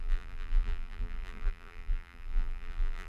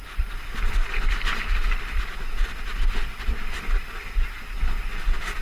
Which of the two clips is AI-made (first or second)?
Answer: first